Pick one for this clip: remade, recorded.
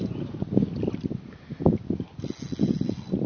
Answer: recorded